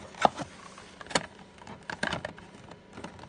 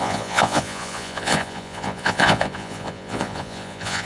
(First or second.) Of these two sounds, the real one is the first